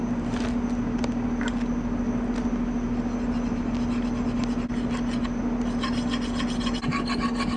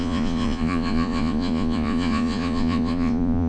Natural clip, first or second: first